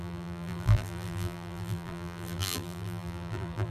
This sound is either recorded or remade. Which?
remade